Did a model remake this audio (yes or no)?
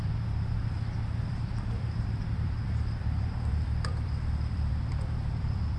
yes